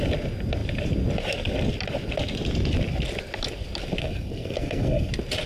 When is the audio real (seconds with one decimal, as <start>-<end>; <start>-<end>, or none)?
0.0-4.0; 5.1-5.5